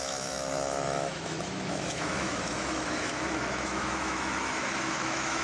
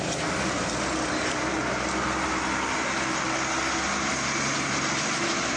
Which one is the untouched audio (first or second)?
second